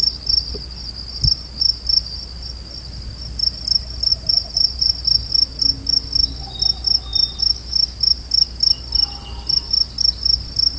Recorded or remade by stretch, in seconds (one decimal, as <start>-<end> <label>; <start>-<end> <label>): 0.0-4.1 recorded; 4.1-4.9 remade; 4.9-10.8 recorded